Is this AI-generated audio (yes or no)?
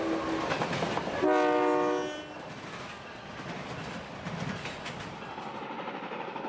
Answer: no